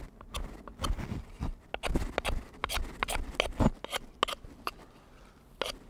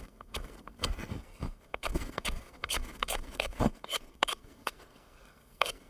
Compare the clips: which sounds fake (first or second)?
second